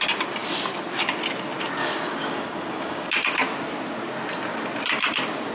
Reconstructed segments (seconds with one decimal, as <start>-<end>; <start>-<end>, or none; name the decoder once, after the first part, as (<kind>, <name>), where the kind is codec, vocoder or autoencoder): 1.8-3.1 (codec, DAC)